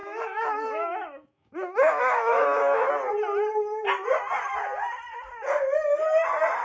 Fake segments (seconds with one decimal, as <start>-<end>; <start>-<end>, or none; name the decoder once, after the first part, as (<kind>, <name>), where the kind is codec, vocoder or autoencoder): 0.0-2.9 (autoencoder, DAC-VAE)